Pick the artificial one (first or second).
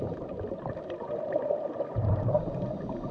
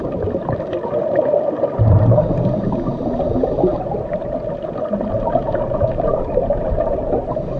first